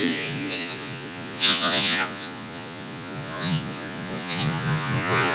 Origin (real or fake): fake